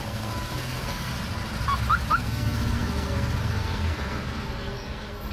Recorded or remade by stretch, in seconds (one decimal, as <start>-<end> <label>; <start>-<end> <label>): 0.0-1.1 remade; 1.1-2.1 recorded; 2.1-5.3 remade